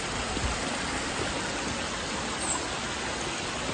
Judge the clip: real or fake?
real